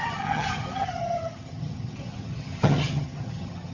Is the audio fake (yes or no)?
yes